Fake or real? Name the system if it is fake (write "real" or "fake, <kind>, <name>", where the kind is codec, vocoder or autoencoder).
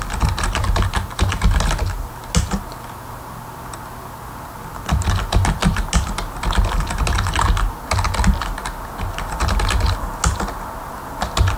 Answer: real